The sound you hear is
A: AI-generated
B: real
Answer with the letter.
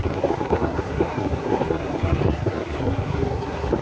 A